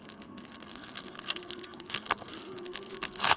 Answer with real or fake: fake